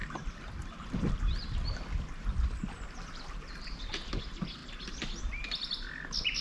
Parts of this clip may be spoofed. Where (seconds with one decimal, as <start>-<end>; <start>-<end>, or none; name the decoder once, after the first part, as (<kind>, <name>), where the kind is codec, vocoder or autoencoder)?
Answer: 0.0-3.8 (vocoder, BigVGAN v2)